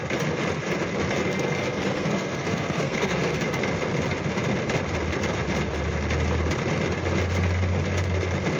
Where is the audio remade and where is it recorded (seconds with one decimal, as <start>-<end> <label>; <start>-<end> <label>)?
0.0-1.2 recorded; 1.2-3.4 remade; 3.4-8.6 recorded